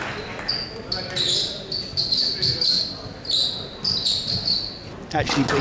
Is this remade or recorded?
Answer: recorded